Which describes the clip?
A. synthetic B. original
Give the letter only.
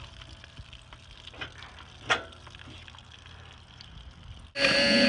B